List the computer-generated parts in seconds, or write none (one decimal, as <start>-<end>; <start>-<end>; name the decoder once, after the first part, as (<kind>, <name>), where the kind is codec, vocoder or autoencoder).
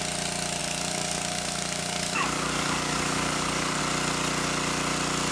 0.6-3.8 (codec, DAC)